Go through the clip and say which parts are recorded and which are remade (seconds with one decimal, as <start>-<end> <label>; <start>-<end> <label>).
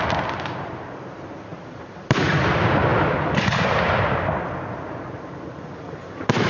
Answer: 0.0-1.5 recorded; 1.5-2.2 remade; 2.2-2.9 recorded; 2.9-4.4 remade; 4.4-6.5 recorded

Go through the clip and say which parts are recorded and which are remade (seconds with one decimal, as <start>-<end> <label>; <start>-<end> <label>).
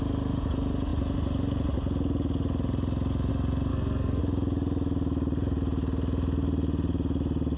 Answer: 0.0-3.7 recorded; 3.7-4.2 remade; 4.2-7.6 recorded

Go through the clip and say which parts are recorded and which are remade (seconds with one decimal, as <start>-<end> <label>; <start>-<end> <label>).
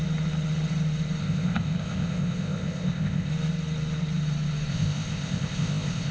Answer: 0.0-1.2 recorded; 1.2-3.3 remade; 3.3-4.7 recorded; 4.7-6.1 remade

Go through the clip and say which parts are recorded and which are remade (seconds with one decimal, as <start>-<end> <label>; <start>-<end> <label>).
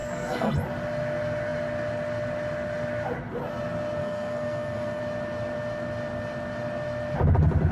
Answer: 0.0-0.5 remade; 0.5-4.0 recorded; 4.0-5.0 remade; 5.0-7.7 recorded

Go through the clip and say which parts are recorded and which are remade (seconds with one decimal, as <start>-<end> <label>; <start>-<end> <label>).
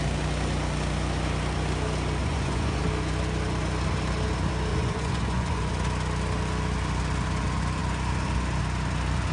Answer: 0.0-2.2 recorded; 2.2-2.8 remade; 2.8-4.7 recorded; 4.7-5.7 remade; 5.7-9.3 recorded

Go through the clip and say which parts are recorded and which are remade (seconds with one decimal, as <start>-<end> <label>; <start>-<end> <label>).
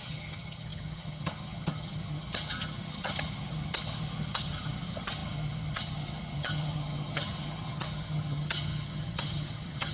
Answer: 0.0-9.9 remade